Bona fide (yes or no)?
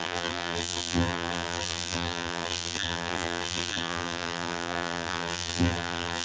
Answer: no